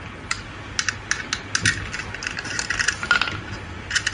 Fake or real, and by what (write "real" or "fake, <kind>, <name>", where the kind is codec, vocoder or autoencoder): real